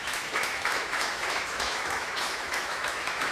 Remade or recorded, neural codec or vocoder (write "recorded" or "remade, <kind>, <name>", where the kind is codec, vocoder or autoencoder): remade, autoencoder, DAC-VAE